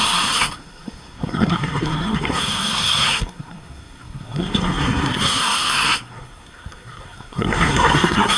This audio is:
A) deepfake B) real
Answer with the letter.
A